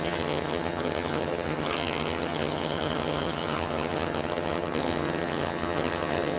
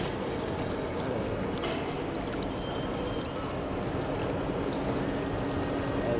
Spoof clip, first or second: first